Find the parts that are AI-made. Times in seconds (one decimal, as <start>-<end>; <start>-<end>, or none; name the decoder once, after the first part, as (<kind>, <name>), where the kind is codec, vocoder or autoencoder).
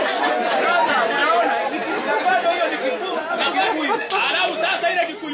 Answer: none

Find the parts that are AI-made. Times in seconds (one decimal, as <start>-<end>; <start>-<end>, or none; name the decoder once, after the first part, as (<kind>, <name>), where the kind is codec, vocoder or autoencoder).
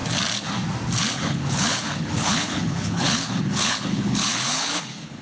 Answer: 1.1-5.2 (codec, HILCodec)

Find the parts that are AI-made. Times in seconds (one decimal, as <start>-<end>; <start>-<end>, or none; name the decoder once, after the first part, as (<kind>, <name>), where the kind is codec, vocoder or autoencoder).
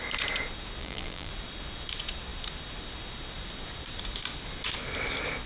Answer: 0.8-1.3 (vocoder, BigVGAN v2)